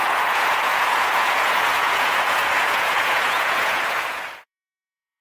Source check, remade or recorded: remade